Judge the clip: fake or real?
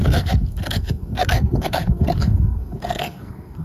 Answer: fake